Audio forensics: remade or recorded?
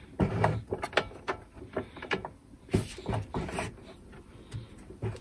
recorded